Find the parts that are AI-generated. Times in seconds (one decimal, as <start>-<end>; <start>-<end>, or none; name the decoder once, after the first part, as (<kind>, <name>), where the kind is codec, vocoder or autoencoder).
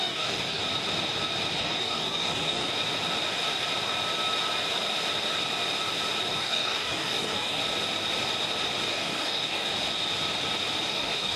0.0-0.6 (codec, DAC); 1.6-2.7; 6.3-7.6; 8.9-9.7; 10.9-11.4